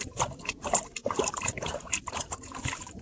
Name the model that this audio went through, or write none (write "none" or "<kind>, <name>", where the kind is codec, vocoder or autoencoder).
vocoder, BigVGAN v2